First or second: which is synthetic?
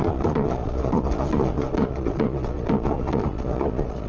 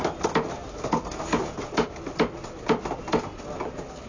first